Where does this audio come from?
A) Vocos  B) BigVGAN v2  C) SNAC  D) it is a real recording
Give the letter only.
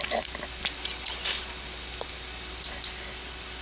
D